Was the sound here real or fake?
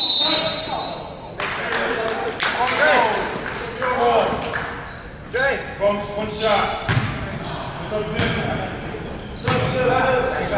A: real